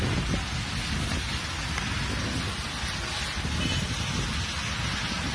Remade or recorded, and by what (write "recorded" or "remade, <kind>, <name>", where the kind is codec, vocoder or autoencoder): recorded